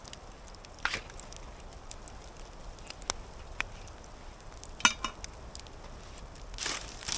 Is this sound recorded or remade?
recorded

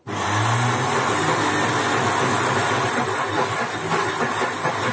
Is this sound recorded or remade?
recorded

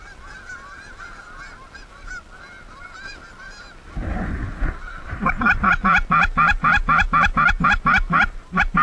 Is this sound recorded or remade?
recorded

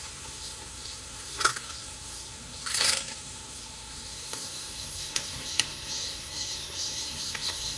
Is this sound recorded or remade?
remade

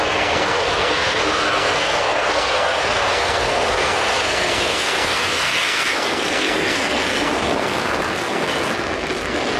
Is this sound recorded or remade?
remade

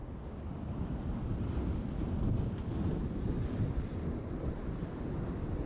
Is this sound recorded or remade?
recorded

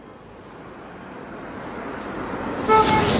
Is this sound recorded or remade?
recorded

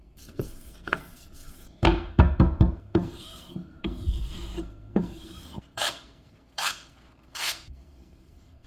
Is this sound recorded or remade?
remade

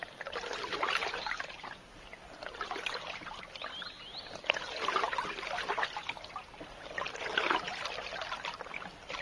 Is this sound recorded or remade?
recorded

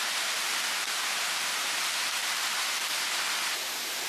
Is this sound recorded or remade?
recorded